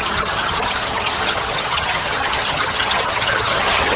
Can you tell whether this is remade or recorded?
remade